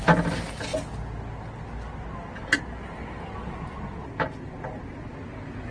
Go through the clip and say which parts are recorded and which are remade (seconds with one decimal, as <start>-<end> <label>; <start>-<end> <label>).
0.0-5.7 recorded